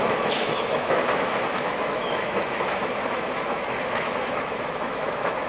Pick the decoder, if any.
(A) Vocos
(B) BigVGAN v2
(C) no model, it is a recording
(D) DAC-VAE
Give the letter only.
D